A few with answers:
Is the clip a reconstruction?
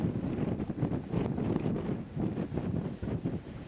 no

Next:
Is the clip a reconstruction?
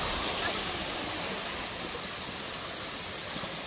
no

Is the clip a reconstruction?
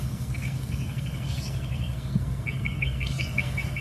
yes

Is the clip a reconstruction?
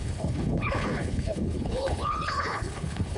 yes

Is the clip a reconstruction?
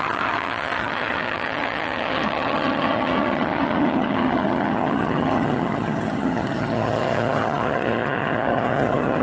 yes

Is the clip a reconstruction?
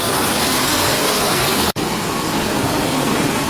yes